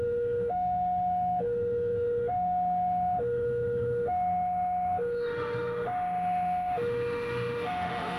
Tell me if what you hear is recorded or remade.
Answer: remade